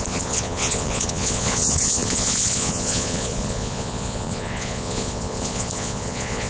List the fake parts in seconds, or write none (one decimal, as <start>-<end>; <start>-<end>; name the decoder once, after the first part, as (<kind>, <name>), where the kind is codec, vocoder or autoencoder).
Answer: 0.0-6.5 (vocoder, Vocos)